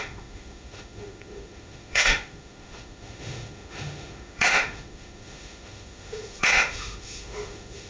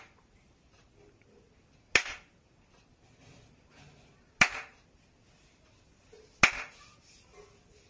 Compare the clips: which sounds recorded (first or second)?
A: second